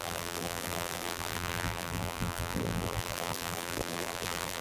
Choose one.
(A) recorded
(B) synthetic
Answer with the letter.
B